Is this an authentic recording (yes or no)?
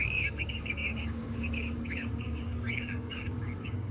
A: no